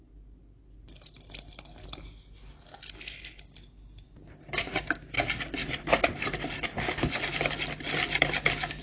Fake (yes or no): no